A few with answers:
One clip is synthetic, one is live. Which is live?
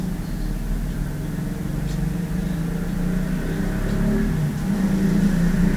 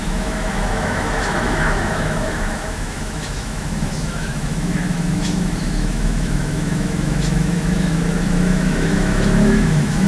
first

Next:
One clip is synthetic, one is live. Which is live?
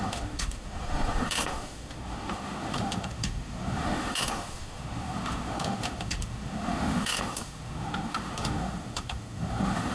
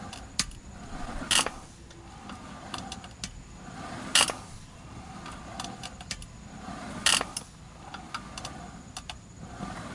second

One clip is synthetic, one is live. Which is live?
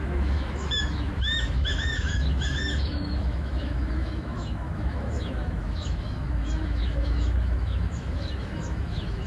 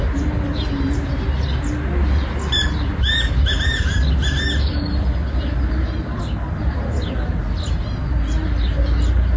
second